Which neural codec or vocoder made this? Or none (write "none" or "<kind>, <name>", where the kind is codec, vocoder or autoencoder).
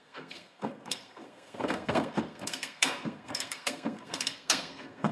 codec, SNAC